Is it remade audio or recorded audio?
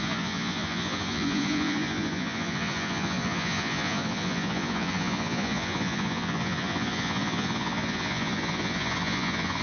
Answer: remade